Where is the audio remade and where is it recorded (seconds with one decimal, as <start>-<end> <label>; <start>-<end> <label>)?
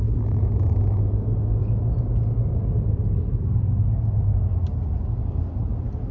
0.0-6.1 recorded